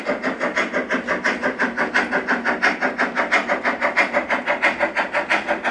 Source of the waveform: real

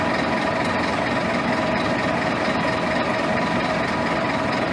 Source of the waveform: real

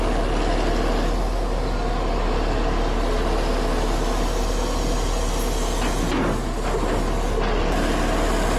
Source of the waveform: real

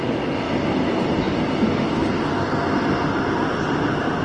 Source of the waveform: real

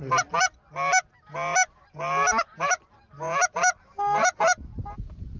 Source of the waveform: real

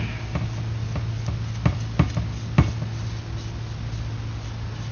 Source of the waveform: real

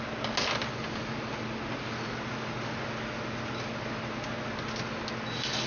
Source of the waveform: real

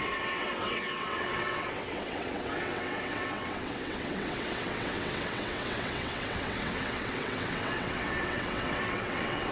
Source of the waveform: fake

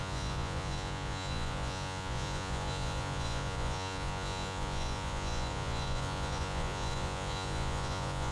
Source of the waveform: fake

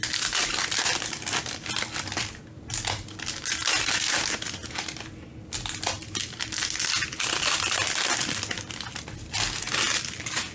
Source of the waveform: real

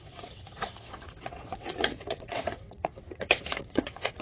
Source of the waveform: fake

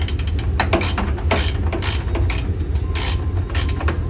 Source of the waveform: real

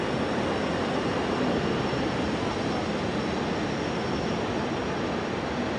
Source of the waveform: real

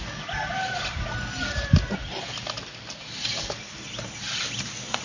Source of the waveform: real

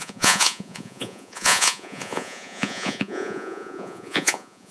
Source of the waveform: fake